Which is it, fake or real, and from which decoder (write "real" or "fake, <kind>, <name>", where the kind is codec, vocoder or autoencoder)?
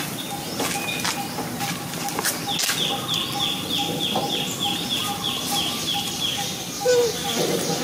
real